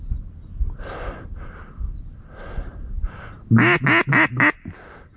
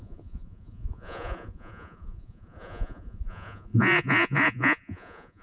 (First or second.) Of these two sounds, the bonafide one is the first